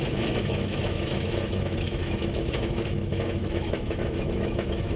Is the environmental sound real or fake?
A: fake